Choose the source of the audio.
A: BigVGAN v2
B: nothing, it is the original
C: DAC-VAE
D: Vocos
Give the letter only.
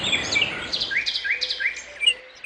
B